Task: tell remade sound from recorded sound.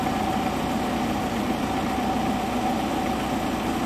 recorded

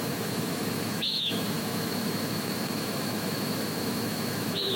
remade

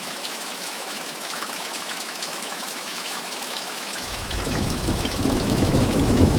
remade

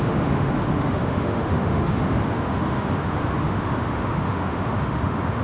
remade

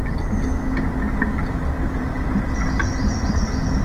recorded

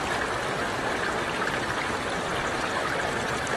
recorded